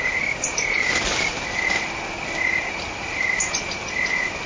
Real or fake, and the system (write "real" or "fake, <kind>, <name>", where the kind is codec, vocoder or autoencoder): real